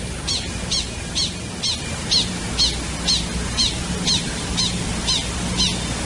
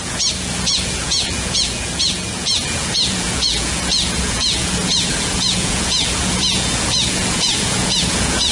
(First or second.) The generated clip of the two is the second